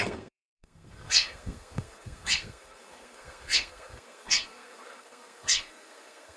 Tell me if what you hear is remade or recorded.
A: remade